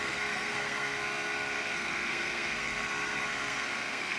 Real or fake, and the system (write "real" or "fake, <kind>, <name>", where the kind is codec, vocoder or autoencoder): fake, codec, SNAC